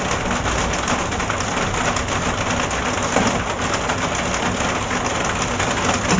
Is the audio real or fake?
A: real